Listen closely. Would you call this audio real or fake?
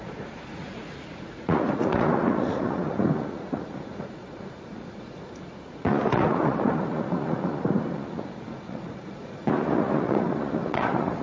fake